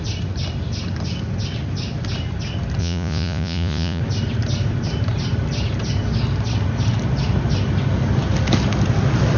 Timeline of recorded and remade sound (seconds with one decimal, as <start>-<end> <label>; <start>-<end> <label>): 0.0-2.8 recorded; 2.8-4.0 remade; 4.0-9.4 recorded

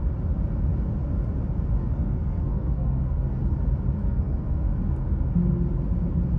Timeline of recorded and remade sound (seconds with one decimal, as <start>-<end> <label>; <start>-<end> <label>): 0.0-1.8 recorded; 1.8-3.4 remade; 3.4-4.0 recorded; 4.0-4.8 remade; 4.8-6.4 recorded

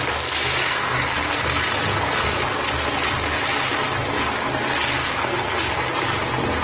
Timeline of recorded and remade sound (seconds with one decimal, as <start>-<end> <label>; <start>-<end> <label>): 0.0-0.6 recorded; 0.6-1.4 remade; 1.4-5.0 recorded; 5.0-5.7 remade; 5.7-6.6 recorded

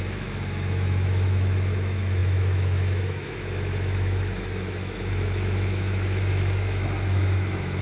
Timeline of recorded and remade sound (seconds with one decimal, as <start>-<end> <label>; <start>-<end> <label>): 0.0-7.8 remade

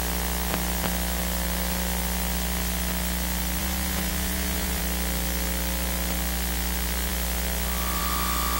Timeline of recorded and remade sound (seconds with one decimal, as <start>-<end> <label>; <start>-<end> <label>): 0.0-3.6 recorded; 3.6-4.8 remade; 4.8-8.6 recorded

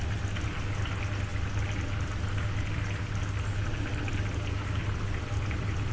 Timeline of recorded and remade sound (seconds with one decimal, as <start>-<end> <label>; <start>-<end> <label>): 0.0-5.9 recorded

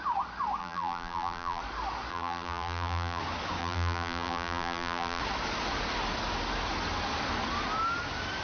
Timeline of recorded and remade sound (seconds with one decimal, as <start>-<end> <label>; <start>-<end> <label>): 0.0-0.6 recorded; 0.6-1.6 remade; 1.6-2.1 recorded; 2.1-3.2 remade; 3.2-3.6 recorded; 3.6-5.2 remade; 5.2-8.4 recorded